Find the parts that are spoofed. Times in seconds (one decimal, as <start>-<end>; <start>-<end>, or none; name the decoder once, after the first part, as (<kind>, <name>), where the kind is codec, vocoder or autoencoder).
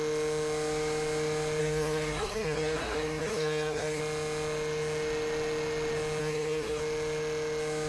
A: 1.6-4.0 (codec, SNAC); 6.2-6.8